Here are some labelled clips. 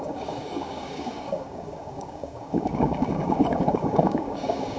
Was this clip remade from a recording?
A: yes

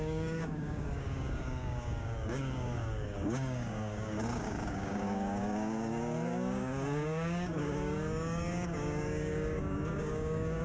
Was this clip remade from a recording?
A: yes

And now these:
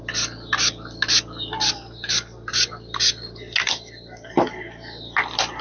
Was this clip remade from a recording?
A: no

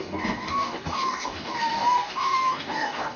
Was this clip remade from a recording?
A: yes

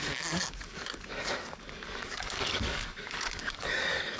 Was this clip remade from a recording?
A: yes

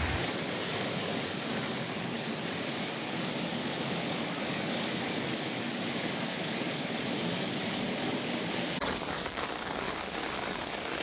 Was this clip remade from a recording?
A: yes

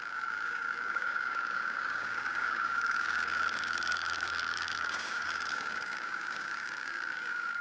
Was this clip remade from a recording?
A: yes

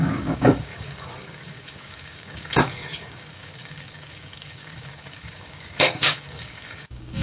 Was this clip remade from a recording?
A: yes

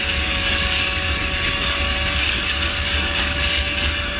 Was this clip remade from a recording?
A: yes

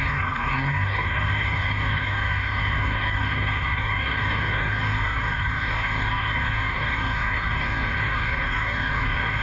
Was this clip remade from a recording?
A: yes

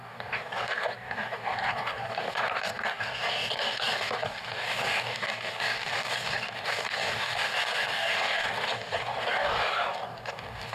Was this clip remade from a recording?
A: yes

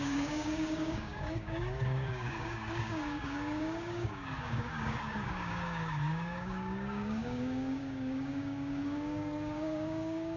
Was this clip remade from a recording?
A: yes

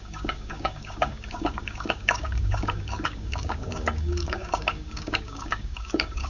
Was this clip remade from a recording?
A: yes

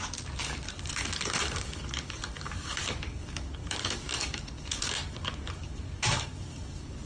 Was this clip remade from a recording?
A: yes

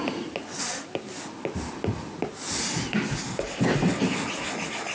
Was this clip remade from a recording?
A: no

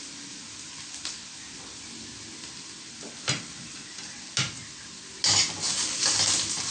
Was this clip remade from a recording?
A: no